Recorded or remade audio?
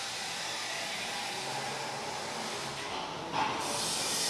recorded